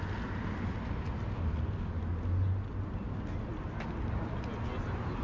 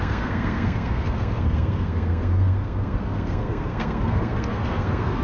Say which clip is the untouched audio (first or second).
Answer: first